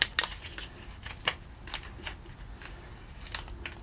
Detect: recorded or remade recorded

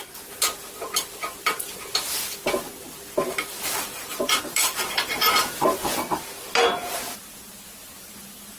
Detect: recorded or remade recorded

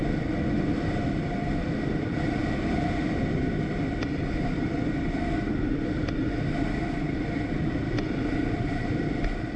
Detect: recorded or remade recorded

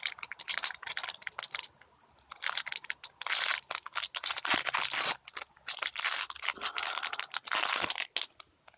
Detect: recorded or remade recorded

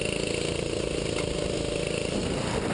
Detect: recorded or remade recorded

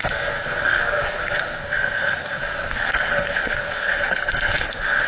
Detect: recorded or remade remade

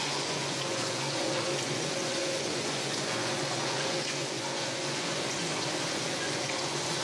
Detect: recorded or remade remade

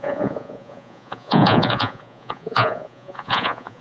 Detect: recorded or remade remade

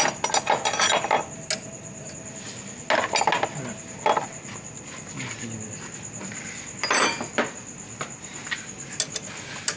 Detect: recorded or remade recorded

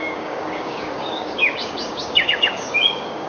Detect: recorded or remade remade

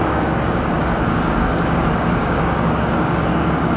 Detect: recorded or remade remade